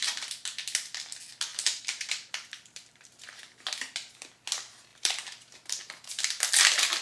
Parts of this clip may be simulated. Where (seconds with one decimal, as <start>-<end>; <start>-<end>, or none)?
1.5-3.6; 4.9-6.1

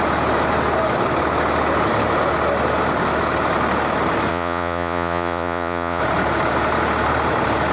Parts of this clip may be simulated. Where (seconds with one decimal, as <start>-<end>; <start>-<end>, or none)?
4.3-6.0

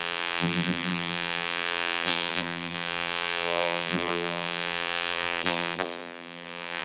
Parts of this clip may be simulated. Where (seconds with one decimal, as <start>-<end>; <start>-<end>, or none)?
0.0-6.8

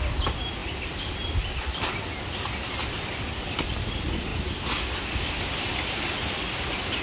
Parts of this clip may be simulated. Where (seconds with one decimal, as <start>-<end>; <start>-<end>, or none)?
none

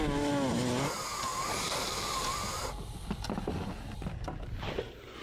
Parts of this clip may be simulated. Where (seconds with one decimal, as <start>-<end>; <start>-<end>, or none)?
none

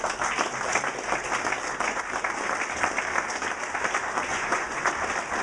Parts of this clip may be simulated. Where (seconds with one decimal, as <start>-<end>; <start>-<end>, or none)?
4.3-4.9

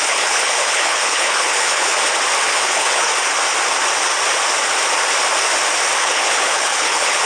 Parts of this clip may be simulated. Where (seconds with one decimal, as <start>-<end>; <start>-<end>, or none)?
0.0-1.9; 2.5-3.1; 6.0-7.3